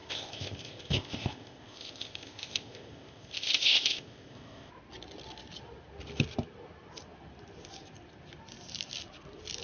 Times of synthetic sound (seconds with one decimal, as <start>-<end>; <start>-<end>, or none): 0.0-4.7